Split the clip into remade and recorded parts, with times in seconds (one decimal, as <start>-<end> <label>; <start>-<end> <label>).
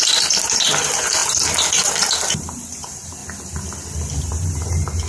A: 0.0-1.2 remade; 1.2-1.8 recorded; 1.8-3.2 remade; 3.2-4.2 recorded; 4.2-5.1 remade